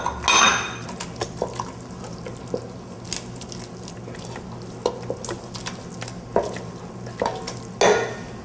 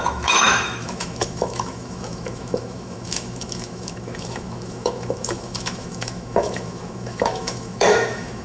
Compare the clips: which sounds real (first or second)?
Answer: first